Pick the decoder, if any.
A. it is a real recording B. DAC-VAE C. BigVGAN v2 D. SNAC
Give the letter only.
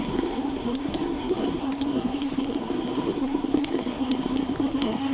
D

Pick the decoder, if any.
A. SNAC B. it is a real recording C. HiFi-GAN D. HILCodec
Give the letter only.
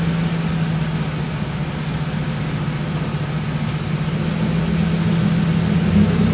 B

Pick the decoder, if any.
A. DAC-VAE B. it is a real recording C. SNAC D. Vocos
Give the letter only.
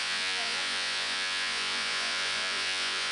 D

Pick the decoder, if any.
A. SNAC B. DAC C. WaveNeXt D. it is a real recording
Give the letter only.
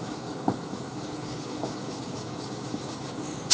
B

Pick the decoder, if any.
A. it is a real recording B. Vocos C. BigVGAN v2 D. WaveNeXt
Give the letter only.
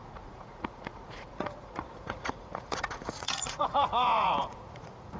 B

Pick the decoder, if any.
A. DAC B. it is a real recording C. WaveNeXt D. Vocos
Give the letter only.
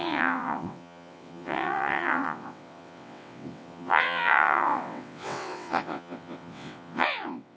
C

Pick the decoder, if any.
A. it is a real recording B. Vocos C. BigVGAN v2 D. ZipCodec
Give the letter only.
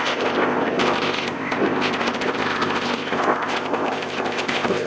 D